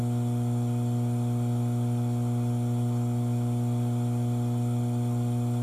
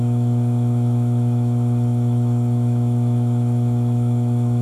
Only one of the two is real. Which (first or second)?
first